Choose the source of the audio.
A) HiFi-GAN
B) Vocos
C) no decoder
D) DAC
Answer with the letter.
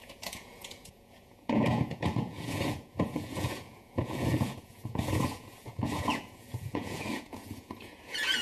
B